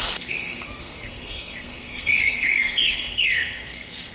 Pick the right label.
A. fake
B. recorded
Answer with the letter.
A